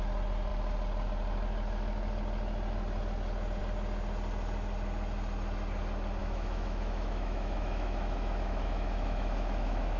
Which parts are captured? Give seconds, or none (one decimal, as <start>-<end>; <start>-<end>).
0.0-6.2